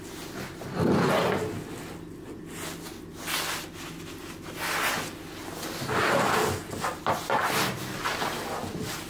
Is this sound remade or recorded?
recorded